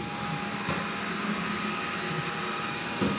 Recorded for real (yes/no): yes